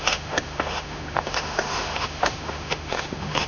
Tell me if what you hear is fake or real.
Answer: fake